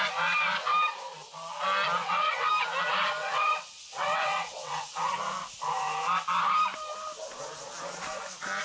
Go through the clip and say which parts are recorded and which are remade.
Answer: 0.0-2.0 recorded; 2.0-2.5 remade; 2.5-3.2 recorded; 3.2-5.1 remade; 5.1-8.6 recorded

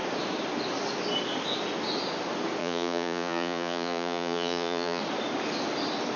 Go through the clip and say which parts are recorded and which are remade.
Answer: 0.0-2.6 recorded; 2.6-5.0 remade; 5.0-6.2 recorded

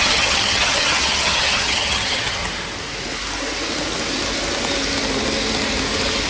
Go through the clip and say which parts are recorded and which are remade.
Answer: 0.0-2.4 remade; 2.4-6.3 recorded

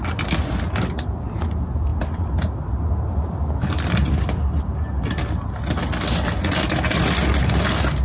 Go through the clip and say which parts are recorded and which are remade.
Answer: 0.0-8.0 recorded

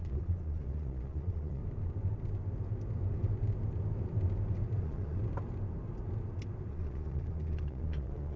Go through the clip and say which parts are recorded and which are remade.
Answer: 0.0-1.6 remade; 1.6-4.8 recorded; 4.8-5.2 remade; 5.2-6.7 recorded; 6.7-8.4 remade

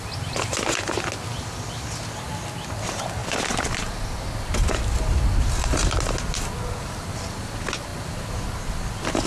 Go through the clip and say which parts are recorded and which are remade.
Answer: 0.0-9.3 recorded